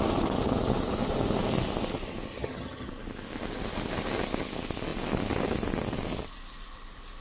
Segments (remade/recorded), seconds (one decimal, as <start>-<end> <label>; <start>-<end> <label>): 0.0-2.3 recorded; 2.3-2.9 remade; 2.9-7.2 recorded